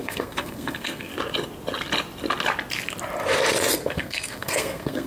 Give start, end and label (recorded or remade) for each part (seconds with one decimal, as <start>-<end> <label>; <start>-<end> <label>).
0.0-1.1 remade; 1.1-3.7 recorded; 3.7-5.1 remade